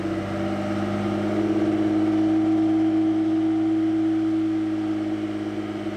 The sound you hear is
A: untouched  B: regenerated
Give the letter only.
A